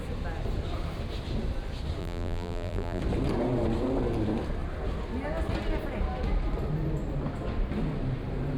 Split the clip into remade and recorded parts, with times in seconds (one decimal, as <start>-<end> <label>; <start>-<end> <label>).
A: 0.0-2.0 recorded; 2.0-3.0 remade; 3.0-8.6 recorded